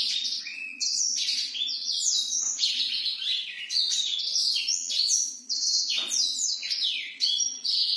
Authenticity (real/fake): fake